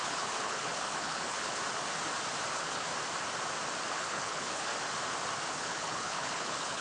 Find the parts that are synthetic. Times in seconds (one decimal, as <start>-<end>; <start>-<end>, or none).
0.0-1.6; 2.5-2.9; 3.9-4.7; 5.5-6.8